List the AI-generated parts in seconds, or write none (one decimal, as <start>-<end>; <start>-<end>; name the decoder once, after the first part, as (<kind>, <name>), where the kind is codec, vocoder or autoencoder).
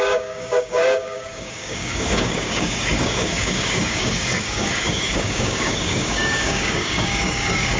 0.0-7.8 (codec, DAC)